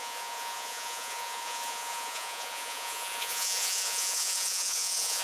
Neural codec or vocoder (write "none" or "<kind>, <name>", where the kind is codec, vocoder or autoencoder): vocoder, Vocos